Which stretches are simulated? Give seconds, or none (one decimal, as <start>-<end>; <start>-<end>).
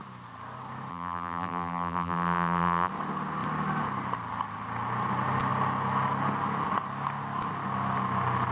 0.9-2.9